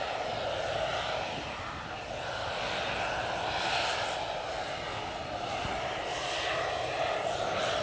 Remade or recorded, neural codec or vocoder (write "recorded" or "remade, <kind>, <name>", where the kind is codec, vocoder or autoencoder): recorded